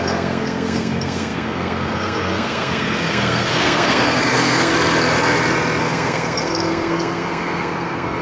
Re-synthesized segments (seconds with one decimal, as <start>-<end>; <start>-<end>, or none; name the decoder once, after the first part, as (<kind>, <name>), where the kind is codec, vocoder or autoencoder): 0.0-4.7 (codec, SNAC); 5.8-8.2